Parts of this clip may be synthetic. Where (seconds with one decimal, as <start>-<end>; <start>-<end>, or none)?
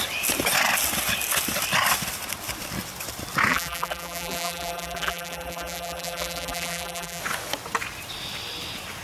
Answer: 3.5-7.2